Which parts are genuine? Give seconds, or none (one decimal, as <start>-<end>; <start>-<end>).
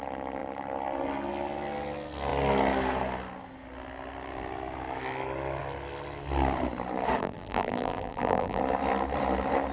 0.0-7.2; 8.6-9.7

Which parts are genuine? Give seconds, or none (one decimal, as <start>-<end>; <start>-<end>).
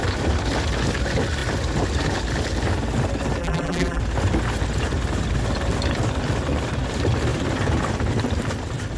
0.0-3.4; 4.0-9.0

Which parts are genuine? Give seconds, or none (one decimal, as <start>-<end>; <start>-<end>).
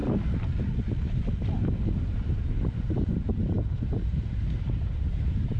0.0-2.1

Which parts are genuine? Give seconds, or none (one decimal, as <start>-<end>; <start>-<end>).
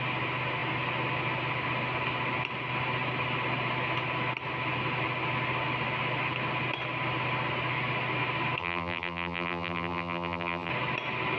0.0-8.6; 10.7-11.4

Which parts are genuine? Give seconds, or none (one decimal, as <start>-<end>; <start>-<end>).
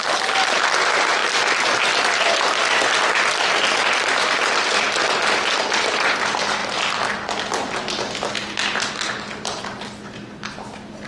0.0-11.1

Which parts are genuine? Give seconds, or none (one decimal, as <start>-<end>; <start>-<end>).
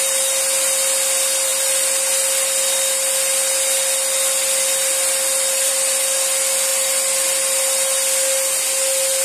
0.0-9.2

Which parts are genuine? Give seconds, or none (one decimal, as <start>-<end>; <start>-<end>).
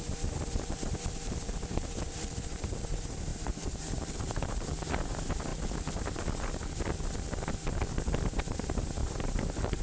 5.5-8.2